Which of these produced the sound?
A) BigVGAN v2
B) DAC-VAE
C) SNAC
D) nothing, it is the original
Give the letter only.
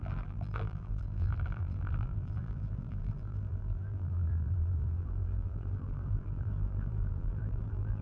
A